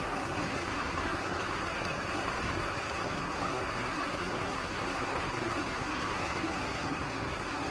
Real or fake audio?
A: fake